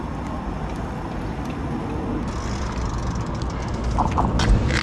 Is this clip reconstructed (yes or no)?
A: no